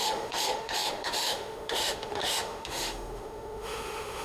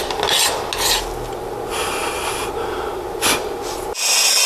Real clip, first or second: second